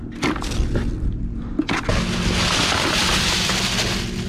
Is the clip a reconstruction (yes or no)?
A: no